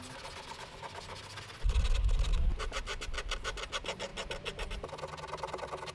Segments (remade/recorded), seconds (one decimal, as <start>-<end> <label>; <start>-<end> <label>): 0.0-5.9 recorded